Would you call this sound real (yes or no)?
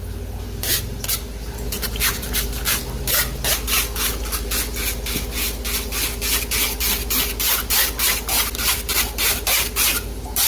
yes